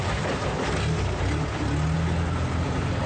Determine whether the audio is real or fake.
real